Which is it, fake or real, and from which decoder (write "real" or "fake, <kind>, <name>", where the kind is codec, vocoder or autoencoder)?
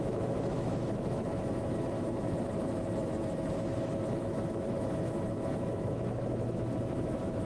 fake, autoencoder, DAC-VAE